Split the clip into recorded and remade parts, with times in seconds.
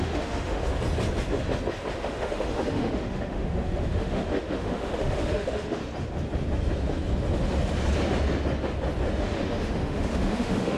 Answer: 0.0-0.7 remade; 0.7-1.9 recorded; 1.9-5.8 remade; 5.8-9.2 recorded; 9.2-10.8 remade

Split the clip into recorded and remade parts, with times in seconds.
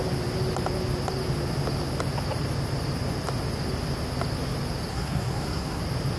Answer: 0.0-4.9 recorded; 4.9-5.8 remade; 5.8-6.2 recorded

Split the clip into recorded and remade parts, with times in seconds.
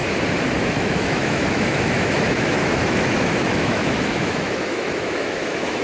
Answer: 0.0-0.6 recorded; 0.6-5.8 remade